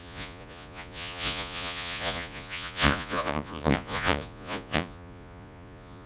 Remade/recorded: remade